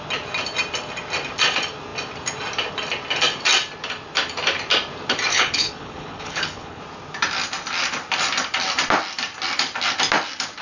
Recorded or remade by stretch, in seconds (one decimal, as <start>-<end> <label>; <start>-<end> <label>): 0.0-5.3 recorded; 5.3-6.8 remade; 6.8-10.6 recorded